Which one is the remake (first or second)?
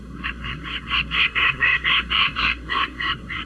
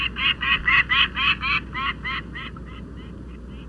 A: first